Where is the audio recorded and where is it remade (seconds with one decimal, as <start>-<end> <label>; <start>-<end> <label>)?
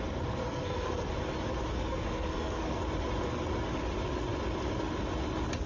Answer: 0.0-0.4 recorded; 0.4-1.1 remade; 1.1-1.7 recorded; 1.7-2.8 remade; 2.8-5.7 recorded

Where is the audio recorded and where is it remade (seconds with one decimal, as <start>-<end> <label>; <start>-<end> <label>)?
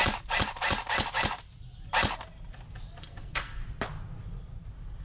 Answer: 0.0-3.0 recorded; 3.0-3.6 remade; 3.6-5.0 recorded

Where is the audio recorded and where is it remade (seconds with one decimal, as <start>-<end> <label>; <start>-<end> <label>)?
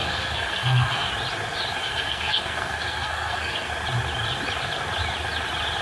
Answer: 0.0-1.1 remade; 1.1-1.8 recorded; 1.8-3.7 remade; 3.7-5.8 recorded